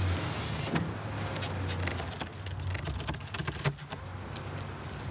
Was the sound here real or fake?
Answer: real